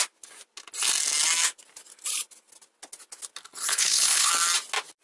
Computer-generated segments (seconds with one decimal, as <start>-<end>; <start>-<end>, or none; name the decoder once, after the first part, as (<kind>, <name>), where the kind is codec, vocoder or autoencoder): 3.4-4.3 (codec, HILCodec)